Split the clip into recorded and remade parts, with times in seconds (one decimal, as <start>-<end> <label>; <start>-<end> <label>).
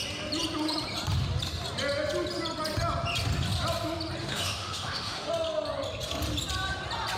0.0-4.2 recorded; 4.2-5.3 remade; 5.3-7.2 recorded